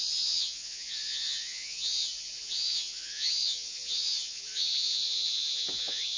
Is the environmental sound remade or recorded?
remade